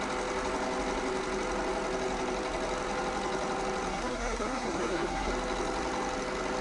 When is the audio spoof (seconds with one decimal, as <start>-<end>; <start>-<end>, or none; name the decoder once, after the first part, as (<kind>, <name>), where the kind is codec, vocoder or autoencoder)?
3.9-5.3 (codec, SNAC)